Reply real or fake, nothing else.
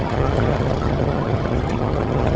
fake